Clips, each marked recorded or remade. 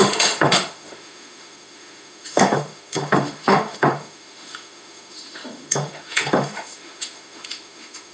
remade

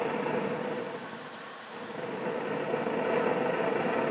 recorded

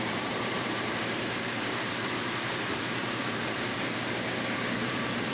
remade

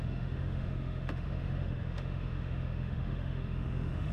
remade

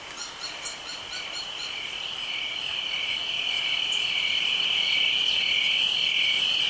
recorded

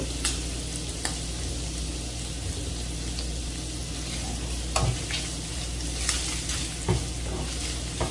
recorded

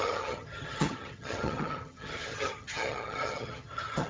remade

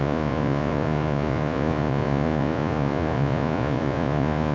remade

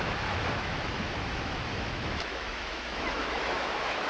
remade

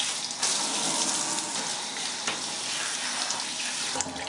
recorded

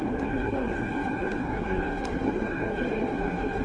remade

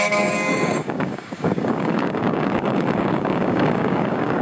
remade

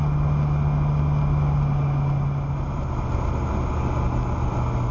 recorded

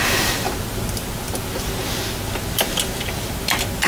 recorded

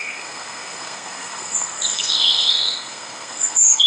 remade